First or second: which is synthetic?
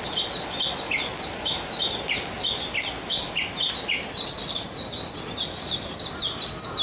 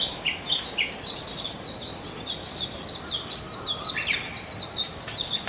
second